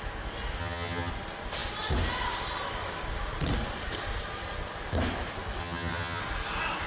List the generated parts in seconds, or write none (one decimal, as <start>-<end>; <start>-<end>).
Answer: 0.6-1.1; 5.6-6.2